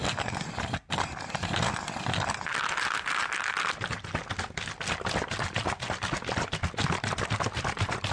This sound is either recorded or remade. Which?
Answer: recorded